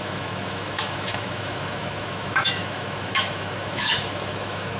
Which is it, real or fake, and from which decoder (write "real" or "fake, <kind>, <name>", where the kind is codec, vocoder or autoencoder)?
fake, autoencoder, DAC-VAE